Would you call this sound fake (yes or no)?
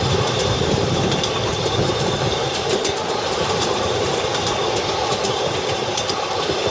yes